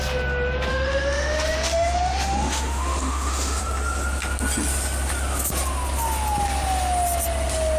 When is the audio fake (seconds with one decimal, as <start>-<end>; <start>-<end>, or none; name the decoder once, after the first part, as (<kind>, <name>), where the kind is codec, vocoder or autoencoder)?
0.7-3.6 (autoencoder, DAC-VAE)